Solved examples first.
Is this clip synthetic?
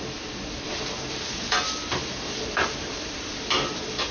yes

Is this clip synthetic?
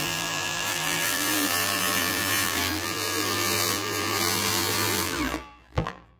yes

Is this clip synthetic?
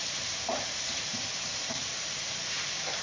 yes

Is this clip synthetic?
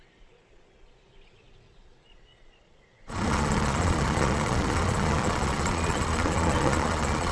yes